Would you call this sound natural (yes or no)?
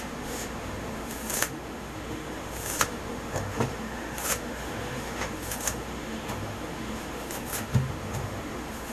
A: no